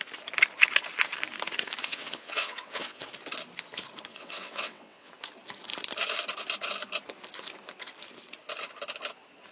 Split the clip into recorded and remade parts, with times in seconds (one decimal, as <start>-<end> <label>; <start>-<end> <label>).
0.0-1.8 recorded; 1.8-3.1 remade; 3.1-4.1 recorded; 4.1-5.1 remade; 5.1-9.5 recorded